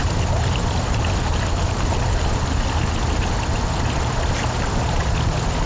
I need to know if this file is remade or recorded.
recorded